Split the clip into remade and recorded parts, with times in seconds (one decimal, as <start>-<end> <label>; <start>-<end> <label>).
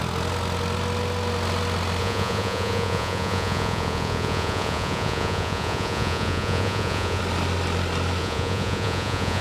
0.0-2.0 recorded; 2.0-7.2 remade; 7.2-8.2 recorded; 8.2-9.4 remade